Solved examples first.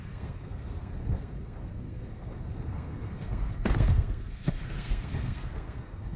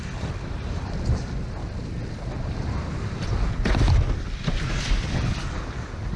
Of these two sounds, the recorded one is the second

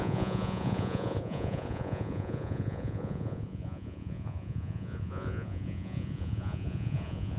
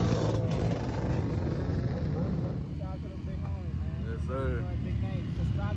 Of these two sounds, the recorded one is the second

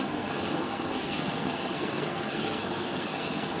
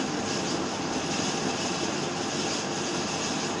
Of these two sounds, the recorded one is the second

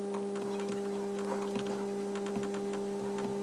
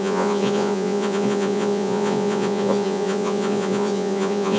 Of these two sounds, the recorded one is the first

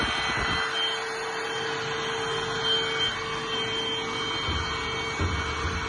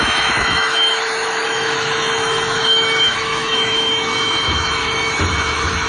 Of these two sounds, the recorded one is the first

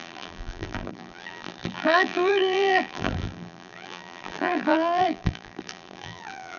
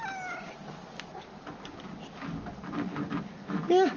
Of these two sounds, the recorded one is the second